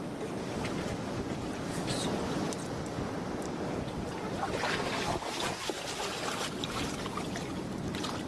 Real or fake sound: real